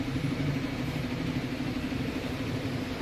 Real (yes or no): no